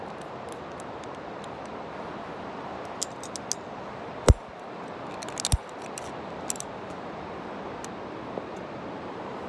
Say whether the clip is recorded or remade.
recorded